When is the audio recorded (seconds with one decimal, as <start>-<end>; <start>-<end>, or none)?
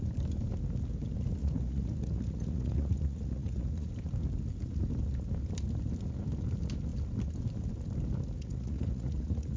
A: 0.0-1.4; 3.9-8.4